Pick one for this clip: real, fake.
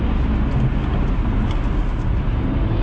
real